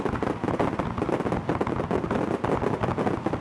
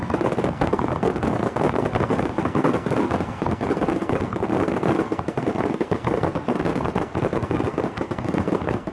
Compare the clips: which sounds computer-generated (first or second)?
second